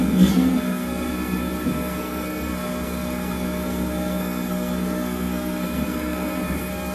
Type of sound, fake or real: fake